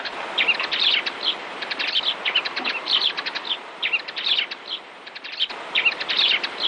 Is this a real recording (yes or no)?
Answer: no